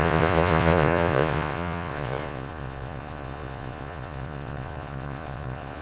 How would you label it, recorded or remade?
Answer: remade